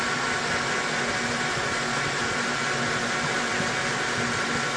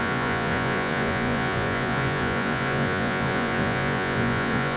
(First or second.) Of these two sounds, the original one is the first